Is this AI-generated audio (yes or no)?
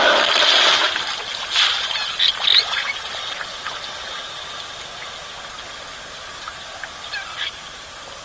no